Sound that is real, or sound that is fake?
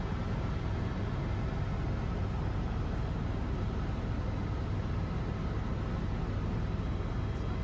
real